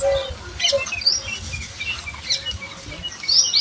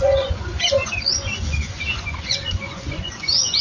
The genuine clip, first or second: first